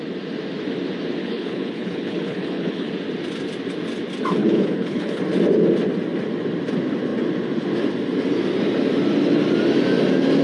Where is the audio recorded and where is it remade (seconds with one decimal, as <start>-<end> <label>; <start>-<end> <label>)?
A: 0.0-1.2 recorded; 1.2-2.9 remade; 2.9-4.4 recorded; 4.4-5.2 remade; 5.2-10.4 recorded